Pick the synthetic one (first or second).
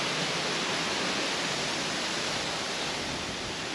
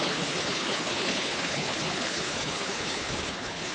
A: second